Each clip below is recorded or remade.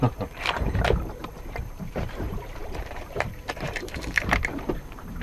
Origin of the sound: remade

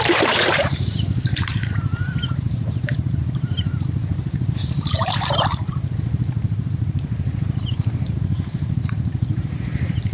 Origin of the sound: remade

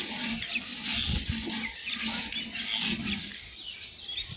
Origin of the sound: recorded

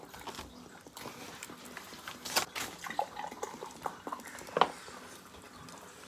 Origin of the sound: recorded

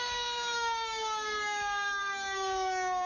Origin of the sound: remade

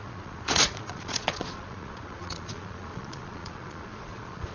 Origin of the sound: remade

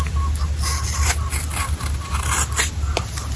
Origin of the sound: recorded